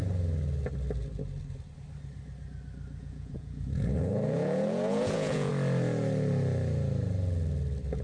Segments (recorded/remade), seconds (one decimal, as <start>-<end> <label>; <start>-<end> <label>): 0.0-3.0 recorded; 3.0-5.5 remade; 5.5-8.0 recorded